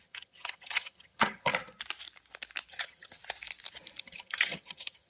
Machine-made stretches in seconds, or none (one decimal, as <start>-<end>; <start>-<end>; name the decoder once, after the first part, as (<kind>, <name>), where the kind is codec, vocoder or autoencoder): 0.0-1.5 (vocoder, HiFi-GAN); 2.7-3.2; 4.0-5.1